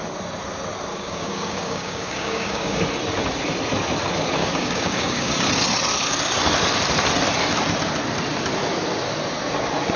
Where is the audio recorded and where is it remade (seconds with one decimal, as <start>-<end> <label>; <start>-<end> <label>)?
0.0-0.9 recorded; 0.9-2.8 remade; 2.8-4.4 recorded; 4.4-5.3 remade; 5.3-10.0 recorded